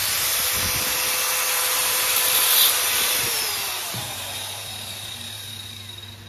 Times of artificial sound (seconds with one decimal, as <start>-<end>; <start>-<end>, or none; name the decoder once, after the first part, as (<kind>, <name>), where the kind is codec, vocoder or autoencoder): 1.7-5.5 (vocoder, BigVGAN v2)